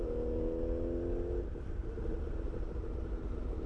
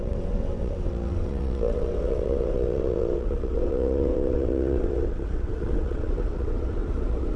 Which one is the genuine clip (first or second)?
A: first